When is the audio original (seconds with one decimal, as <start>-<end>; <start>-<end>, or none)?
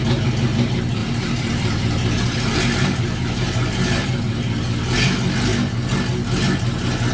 0.0-1.0; 4.2-7.1